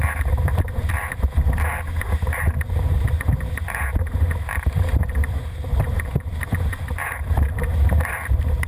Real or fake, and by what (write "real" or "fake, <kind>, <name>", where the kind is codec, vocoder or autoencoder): fake, vocoder, BigVGAN v2